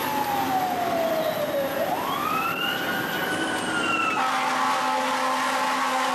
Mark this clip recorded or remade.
recorded